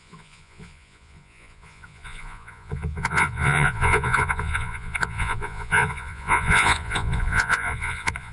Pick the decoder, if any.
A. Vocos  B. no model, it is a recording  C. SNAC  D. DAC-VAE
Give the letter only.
A